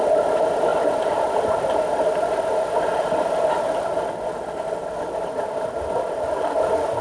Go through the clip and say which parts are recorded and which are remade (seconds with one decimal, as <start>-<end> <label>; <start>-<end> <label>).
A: 0.0-7.0 recorded